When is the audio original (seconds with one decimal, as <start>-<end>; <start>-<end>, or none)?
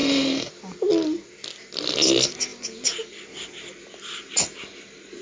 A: 0.5-5.2